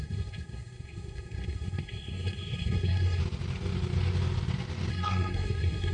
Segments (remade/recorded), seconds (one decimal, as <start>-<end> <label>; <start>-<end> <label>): 0.0-3.2 remade; 3.2-4.9 recorded; 4.9-5.9 remade